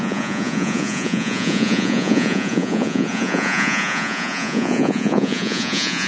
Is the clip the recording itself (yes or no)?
no